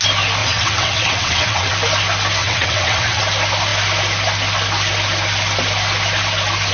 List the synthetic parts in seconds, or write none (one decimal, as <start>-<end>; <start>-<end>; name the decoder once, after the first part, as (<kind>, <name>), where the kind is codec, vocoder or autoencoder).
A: 0.4-1.7 (vocoder, WaveNeXt); 2.4-3.2